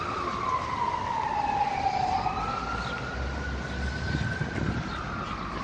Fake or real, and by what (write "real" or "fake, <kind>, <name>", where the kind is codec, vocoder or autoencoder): real